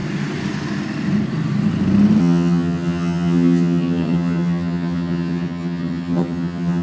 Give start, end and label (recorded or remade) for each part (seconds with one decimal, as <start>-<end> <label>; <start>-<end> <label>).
0.0-2.2 recorded; 2.2-6.8 remade